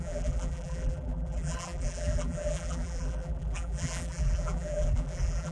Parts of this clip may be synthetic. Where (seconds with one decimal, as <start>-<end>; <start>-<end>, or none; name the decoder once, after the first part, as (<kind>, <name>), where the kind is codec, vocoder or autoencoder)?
0.0-5.5 (vocoder, BigVGAN v2)